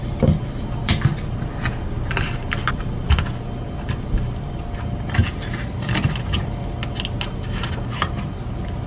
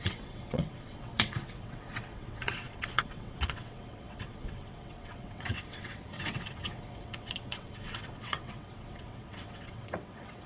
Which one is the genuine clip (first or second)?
first